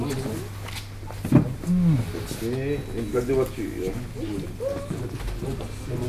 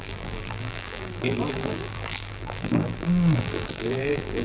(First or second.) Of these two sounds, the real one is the first